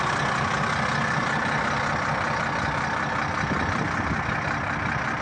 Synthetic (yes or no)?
no